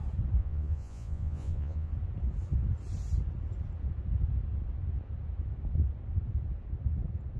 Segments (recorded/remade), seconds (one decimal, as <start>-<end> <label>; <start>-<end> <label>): 0.0-0.4 recorded; 0.4-1.9 remade; 1.9-7.4 recorded